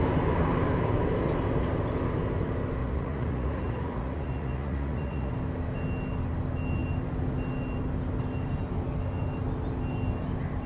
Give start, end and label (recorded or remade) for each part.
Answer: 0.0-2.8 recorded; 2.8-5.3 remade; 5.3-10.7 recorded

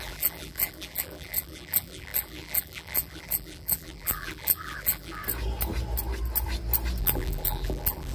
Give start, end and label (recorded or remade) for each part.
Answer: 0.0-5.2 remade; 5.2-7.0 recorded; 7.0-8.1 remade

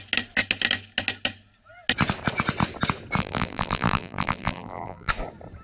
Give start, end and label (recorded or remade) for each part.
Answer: 0.0-3.2 recorded; 3.2-5.1 remade; 5.1-5.6 recorded

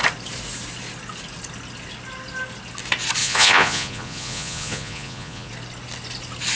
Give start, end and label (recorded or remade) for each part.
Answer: 0.0-3.2 recorded; 3.2-5.5 remade; 5.5-6.6 recorded

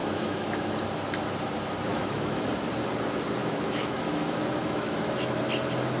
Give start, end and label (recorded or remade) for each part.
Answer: 0.0-0.7 remade; 0.7-1.9 recorded; 1.9-2.5 remade; 2.5-3.4 recorded; 3.4-5.4 remade; 5.4-6.0 recorded

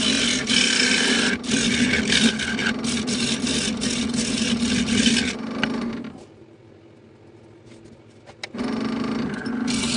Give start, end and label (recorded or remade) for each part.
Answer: 0.0-10.0 recorded

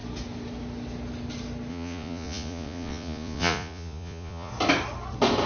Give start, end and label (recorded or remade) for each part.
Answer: 0.0-1.7 recorded; 1.7-4.5 remade; 4.5-5.5 recorded